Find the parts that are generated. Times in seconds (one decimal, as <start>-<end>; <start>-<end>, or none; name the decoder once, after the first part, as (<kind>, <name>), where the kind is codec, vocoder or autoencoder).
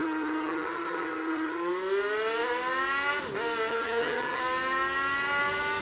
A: 0.0-1.7 (vocoder, HiFi-GAN); 3.7-4.4